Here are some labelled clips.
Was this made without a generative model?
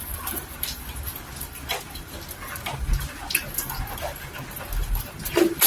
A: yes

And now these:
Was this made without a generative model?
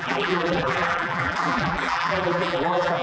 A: no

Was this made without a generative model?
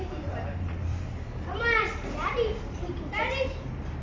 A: no